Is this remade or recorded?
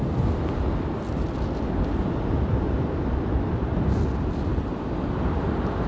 recorded